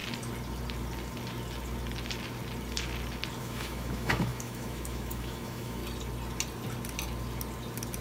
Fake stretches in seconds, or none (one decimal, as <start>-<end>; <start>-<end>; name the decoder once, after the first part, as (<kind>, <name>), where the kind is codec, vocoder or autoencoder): 3.4-5.8 (autoencoder, DAC-VAE)